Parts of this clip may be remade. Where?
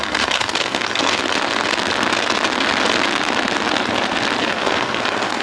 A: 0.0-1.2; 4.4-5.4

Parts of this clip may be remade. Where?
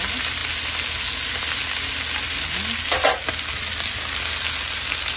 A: none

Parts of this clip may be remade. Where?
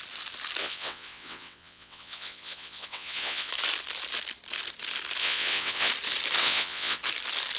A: 0.6-3.5; 5.2-5.9; 6.4-7.0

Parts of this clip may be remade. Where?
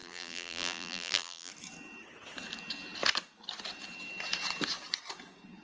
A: 0.0-1.5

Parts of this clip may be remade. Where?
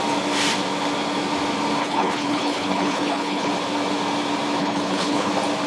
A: 1.8-3.5; 4.6-5.3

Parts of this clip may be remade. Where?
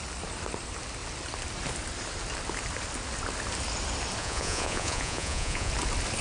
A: 4.2-5.7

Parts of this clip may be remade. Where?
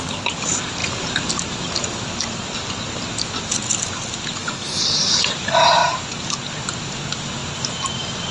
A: 4.4-5.2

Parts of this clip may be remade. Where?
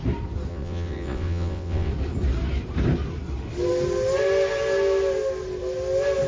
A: 0.5-1.9